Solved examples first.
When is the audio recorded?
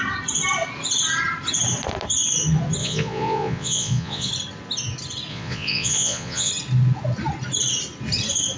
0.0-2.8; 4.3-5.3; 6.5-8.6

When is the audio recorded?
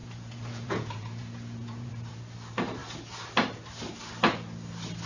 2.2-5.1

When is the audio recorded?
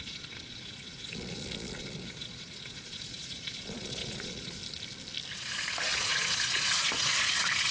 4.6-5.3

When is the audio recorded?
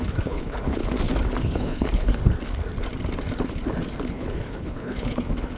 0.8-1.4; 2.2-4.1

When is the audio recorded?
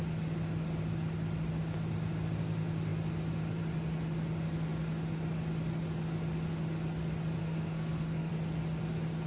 0.0-7.4; 8.3-9.3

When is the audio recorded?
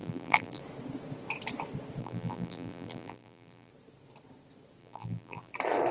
0.6-2.0; 3.7-4.8; 5.5-5.9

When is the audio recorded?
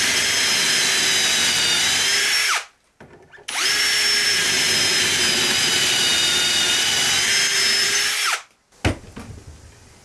0.0-10.0